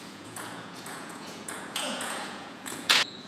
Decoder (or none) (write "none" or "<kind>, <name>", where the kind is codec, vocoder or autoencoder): vocoder, Vocos